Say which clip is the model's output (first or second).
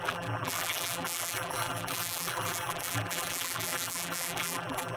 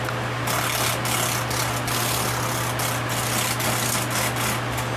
first